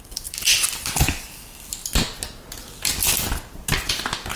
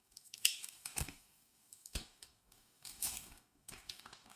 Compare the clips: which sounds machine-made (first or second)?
second